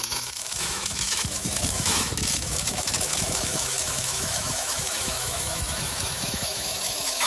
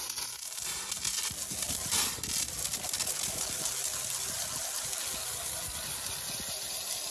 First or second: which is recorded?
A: second